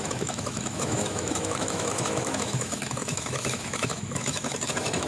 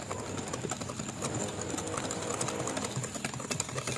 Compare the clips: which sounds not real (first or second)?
first